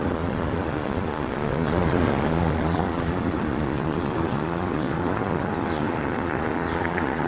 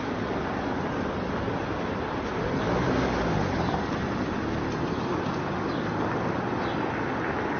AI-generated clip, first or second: first